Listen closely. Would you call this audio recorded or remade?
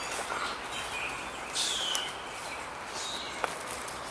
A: recorded